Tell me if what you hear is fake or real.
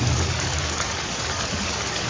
fake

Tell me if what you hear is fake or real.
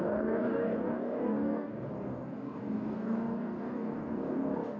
fake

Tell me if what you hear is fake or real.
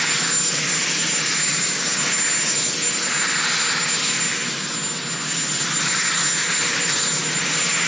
real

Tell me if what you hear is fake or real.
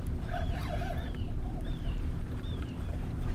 fake